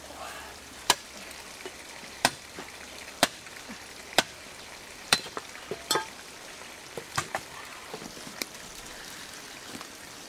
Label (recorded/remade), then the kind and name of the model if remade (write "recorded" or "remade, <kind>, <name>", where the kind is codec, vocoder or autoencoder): remade, vocoder, BigVGAN v2